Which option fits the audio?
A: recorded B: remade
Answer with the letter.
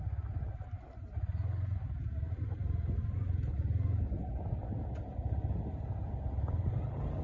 A